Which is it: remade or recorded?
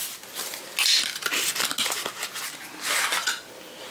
recorded